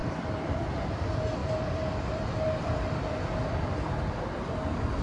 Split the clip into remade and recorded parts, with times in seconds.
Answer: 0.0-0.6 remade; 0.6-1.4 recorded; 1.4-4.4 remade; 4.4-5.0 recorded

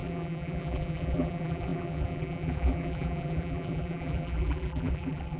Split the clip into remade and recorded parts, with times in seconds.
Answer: 0.0-5.4 remade

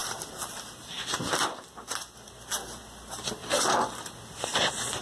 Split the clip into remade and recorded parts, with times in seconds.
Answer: 0.0-0.9 remade; 0.9-3.4 recorded; 3.4-4.0 remade; 4.0-5.0 recorded

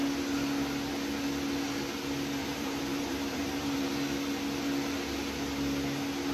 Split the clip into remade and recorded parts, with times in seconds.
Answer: 0.0-2.4 recorded; 2.4-3.9 remade; 3.9-6.3 recorded

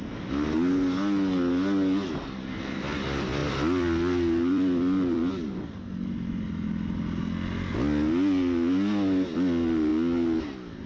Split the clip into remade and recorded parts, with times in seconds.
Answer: 0.0-3.4 recorded; 3.4-5.3 remade; 5.3-10.9 recorded